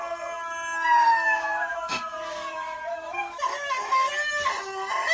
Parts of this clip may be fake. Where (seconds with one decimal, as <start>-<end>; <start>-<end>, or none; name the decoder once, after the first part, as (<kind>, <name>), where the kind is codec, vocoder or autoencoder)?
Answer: 1.0-4.1 (autoencoder, DAC-VAE)